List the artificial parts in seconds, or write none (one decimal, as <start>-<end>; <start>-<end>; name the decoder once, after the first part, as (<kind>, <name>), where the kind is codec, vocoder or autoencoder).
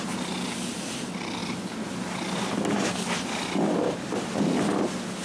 none